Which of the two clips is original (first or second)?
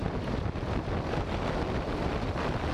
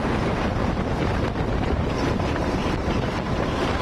first